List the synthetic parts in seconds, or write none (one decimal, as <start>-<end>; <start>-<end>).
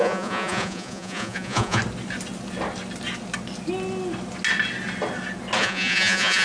0.0-1.8; 5.6-6.4